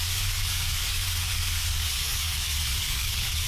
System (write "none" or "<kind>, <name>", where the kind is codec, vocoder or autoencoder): codec, DAC